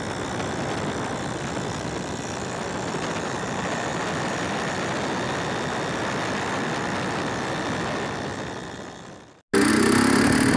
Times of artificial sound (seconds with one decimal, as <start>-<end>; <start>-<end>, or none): 3.9-4.7